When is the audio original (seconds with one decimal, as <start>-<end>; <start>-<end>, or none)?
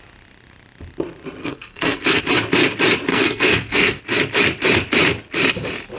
0.0-1.4; 2.2-3.1; 4.0-6.0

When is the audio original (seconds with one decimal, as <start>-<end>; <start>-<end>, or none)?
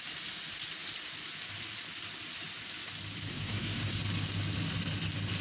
0.0-3.3; 4.0-5.4